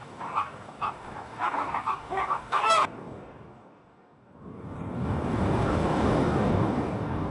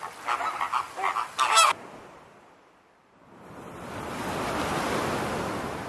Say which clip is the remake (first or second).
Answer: first